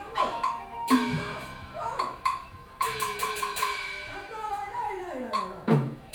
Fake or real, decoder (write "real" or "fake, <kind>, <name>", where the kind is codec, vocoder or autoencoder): fake, autoencoder, DAC-VAE